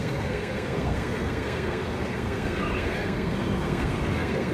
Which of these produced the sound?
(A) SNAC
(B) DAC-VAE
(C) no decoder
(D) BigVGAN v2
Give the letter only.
A